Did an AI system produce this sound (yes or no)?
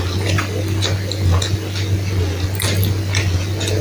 no